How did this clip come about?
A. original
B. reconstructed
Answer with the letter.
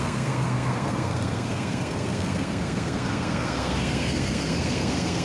B